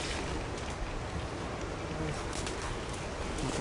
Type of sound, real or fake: real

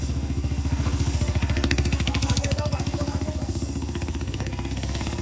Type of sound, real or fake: fake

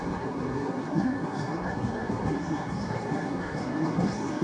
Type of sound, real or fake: fake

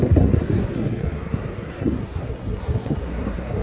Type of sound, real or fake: fake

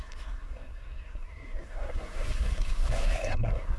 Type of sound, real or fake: fake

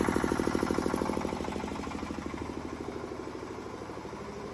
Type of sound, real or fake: real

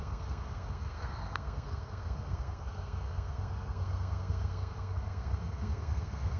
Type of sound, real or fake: fake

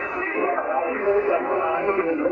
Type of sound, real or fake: fake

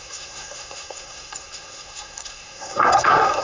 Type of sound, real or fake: fake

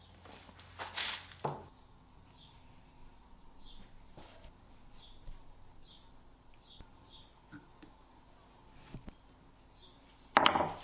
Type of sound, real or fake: real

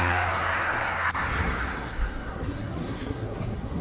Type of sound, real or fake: fake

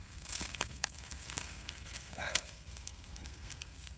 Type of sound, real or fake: fake